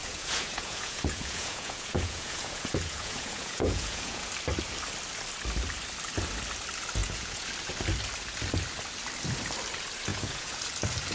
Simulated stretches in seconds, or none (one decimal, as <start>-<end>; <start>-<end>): 0.0-4.3; 7.0-7.5; 10.1-10.6